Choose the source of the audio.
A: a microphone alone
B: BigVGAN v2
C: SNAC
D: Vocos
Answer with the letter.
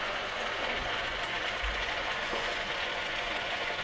D